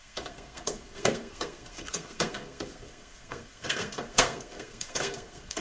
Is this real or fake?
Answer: fake